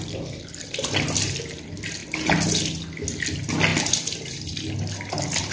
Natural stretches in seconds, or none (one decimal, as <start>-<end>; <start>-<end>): 0.0-5.5